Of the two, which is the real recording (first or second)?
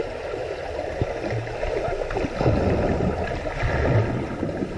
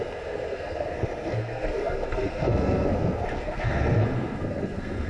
first